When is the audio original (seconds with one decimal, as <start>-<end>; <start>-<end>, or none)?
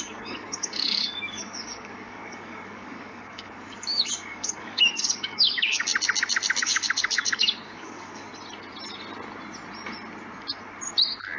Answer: 5.9-6.6; 8.3-11.4